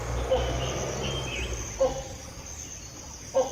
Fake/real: real